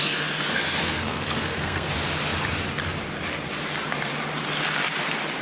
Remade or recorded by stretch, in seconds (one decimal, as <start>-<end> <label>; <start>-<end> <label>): 0.0-0.8 recorded; 0.8-1.9 remade; 1.9-5.4 recorded